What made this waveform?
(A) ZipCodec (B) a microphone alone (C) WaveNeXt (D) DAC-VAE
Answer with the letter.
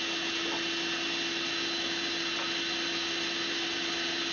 B